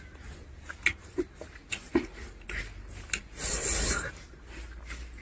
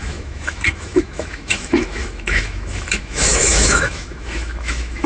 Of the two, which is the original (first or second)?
first